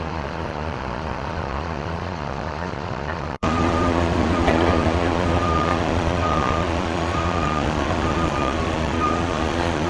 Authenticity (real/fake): fake